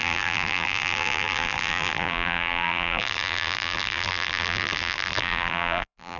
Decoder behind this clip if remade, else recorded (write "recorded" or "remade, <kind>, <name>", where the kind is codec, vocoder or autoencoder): remade, vocoder, BigVGAN v2